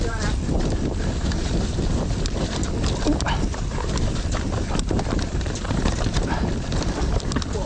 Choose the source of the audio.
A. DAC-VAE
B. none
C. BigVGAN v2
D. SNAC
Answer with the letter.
C